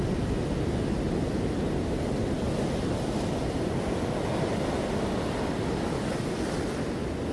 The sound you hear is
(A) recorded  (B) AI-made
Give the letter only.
A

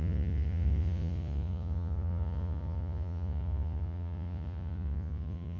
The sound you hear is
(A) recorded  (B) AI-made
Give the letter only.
B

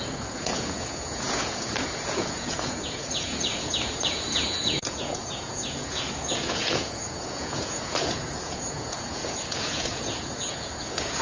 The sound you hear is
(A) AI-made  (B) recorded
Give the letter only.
A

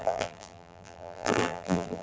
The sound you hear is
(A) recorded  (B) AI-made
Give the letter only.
B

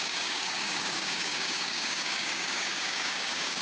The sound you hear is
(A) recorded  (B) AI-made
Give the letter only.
B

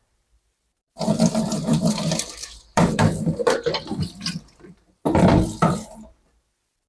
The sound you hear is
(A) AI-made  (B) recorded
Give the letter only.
A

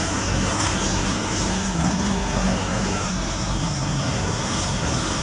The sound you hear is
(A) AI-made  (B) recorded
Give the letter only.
A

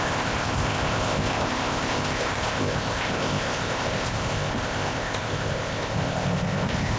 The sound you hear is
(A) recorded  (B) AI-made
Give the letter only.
B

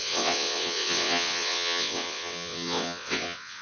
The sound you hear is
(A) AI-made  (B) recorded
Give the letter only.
A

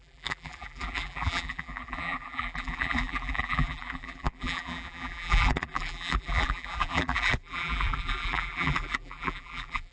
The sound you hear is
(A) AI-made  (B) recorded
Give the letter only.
A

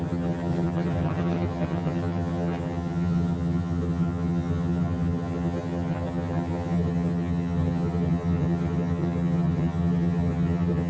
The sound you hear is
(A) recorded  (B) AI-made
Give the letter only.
B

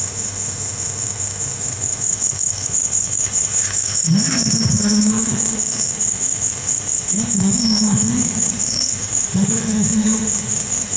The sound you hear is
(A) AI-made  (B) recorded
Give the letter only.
A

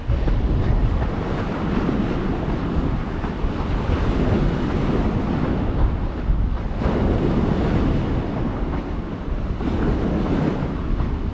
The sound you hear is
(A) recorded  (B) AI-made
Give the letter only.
A